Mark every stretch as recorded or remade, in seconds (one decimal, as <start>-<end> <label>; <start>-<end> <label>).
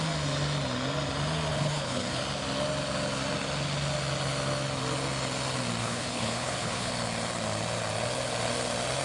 0.0-1.5 recorded; 1.5-2.2 remade; 2.2-5.8 recorded; 5.8-6.9 remade; 6.9-9.0 recorded